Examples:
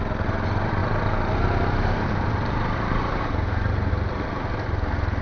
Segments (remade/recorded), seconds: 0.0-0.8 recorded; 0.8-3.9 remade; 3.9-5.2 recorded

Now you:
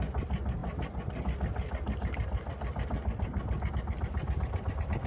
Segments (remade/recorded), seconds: 0.0-5.1 recorded

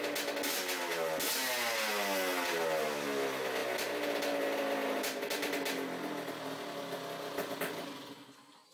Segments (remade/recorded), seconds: 0.0-8.7 recorded